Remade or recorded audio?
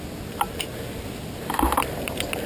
recorded